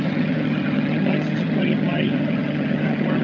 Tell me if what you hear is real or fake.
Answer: fake